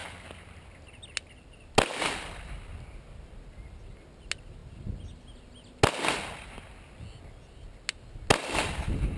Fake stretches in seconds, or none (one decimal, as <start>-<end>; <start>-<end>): 8.4-9.2

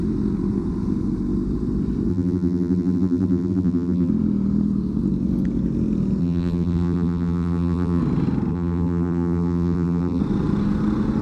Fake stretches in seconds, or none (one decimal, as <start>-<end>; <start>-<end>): 2.1-4.1; 6.2-8.0; 8.5-10.2

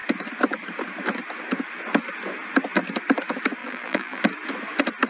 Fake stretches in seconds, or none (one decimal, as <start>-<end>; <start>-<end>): 3.6-4.2